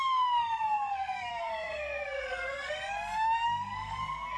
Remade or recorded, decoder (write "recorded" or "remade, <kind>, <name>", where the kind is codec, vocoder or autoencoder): remade, codec, SNAC